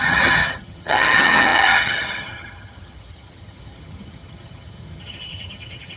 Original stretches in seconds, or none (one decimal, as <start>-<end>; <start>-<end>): none